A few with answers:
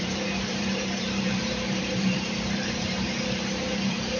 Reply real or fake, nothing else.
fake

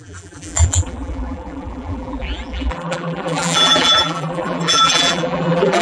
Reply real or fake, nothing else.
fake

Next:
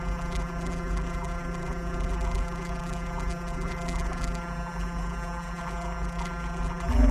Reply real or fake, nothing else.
fake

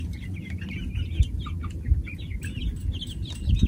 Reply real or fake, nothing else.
real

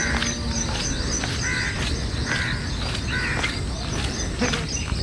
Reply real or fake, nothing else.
real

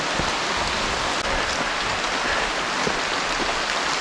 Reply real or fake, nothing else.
real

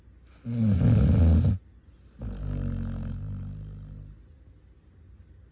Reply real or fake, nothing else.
real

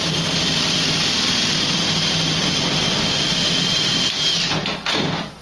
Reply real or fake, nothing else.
real